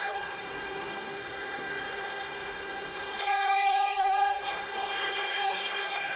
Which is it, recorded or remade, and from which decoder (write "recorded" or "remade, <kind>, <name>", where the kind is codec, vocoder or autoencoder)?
remade, codec, SNAC